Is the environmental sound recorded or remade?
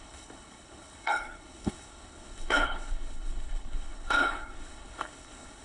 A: remade